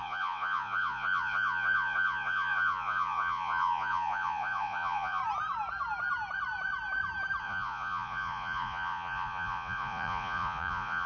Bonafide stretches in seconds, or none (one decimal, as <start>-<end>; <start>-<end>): 5.2-7.4